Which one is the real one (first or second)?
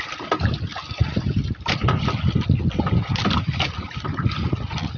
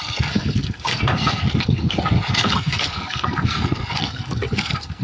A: first